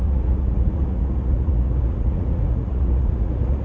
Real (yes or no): no